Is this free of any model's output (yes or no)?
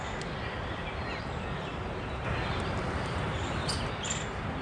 yes